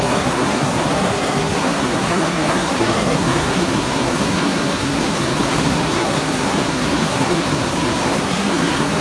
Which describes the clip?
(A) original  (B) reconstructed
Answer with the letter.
B